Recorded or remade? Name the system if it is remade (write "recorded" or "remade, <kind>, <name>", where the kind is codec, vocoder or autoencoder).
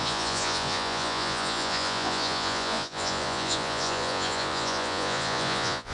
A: remade, vocoder, Vocos